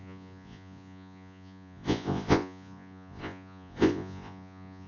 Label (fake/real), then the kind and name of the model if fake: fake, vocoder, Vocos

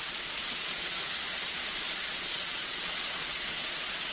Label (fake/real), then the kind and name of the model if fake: fake, vocoder, Vocos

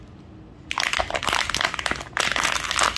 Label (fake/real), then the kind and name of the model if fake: real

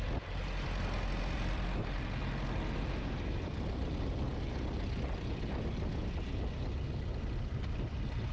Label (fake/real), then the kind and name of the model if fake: real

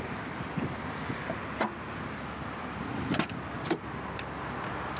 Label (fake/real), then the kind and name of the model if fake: real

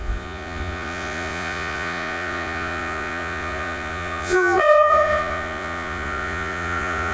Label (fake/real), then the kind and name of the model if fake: fake, vocoder, Vocos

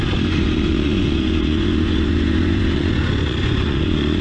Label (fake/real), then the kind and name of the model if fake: fake, vocoder, Vocos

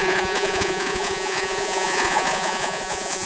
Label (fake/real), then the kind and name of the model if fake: fake, vocoder, Vocos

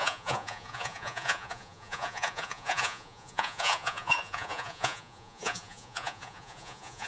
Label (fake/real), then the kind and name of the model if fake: fake, vocoder, Vocos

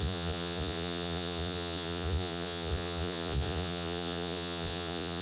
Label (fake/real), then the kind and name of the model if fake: fake, vocoder, Vocos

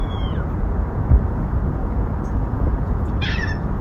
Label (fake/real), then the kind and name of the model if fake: fake, vocoder, Vocos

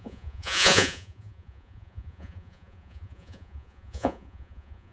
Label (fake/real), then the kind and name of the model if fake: fake, vocoder, Vocos